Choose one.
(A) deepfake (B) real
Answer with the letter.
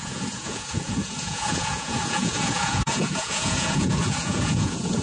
A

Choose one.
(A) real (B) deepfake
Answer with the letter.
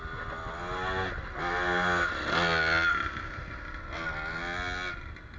A